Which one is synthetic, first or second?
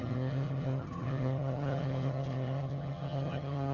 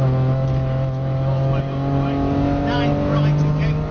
first